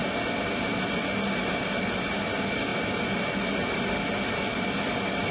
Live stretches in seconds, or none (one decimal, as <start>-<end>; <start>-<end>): 0.0-5.3